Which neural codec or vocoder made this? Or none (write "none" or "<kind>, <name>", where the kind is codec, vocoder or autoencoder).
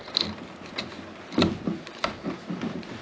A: none